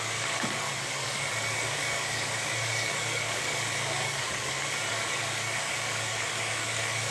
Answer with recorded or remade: remade